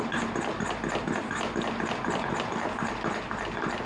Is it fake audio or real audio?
real